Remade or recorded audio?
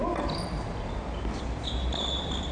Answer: recorded